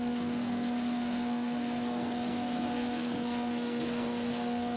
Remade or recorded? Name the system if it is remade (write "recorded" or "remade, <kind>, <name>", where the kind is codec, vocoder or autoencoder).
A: remade, codec, SNAC